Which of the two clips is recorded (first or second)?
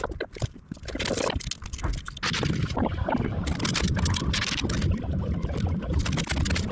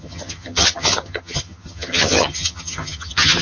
first